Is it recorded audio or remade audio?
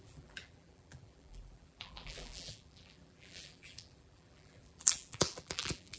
remade